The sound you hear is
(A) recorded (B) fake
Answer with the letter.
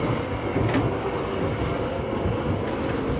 A